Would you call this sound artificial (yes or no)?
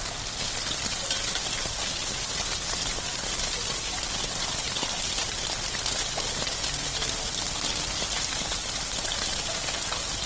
no